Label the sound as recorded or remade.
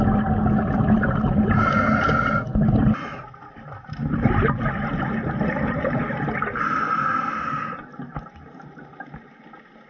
recorded